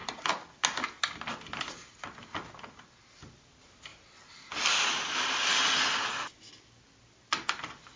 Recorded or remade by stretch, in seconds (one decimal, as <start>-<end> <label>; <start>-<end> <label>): 0.0-8.0 recorded